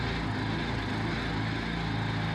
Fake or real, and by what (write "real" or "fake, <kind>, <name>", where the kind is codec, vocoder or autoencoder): real